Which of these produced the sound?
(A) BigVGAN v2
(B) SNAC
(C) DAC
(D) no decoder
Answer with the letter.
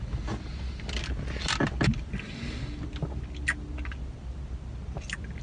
D